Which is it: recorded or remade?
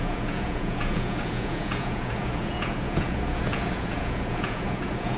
remade